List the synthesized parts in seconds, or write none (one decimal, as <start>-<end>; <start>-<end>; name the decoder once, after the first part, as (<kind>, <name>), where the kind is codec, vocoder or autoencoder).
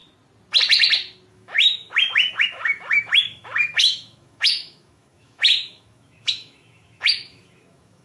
1.3-8.0 (autoencoder, DAC-VAE)